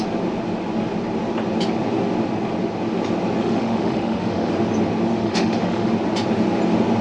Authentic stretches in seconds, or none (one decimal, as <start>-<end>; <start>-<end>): 0.0-3.4; 4.5-5.1; 5.9-7.0